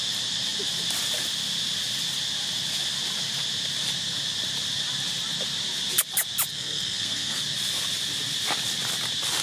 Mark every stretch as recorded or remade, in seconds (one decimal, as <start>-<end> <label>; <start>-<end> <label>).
0.0-6.5 recorded; 6.5-7.4 remade; 7.4-9.4 recorded